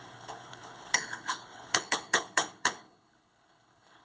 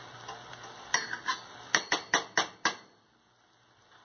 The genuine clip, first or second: second